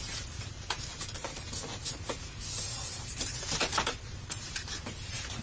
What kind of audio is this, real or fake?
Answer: fake